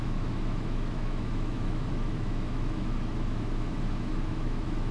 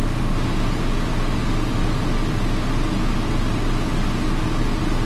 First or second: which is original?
second